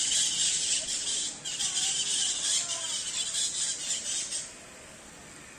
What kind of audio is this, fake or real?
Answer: real